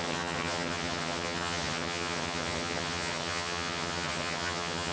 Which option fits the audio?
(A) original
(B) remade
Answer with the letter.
B